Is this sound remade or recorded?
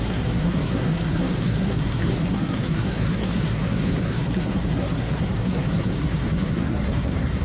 remade